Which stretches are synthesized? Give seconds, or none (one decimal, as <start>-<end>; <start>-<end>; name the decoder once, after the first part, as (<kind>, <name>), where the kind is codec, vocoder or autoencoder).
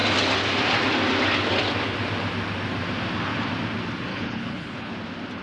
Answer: 4.1-4.9 (codec, HILCodec)